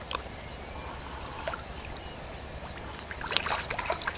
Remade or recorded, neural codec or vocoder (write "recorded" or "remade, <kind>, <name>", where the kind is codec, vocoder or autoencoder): recorded